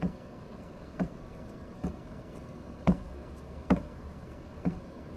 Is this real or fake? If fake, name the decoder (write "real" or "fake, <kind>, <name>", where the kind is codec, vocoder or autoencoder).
fake, codec, SNAC